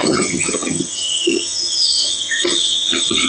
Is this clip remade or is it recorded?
remade